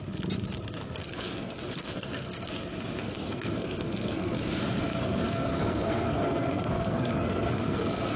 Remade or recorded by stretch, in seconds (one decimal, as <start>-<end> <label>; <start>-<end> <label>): 0.0-1.0 recorded; 1.0-2.5 remade; 2.5-3.0 recorded; 3.0-4.5 remade; 4.5-4.9 recorded; 4.9-8.2 remade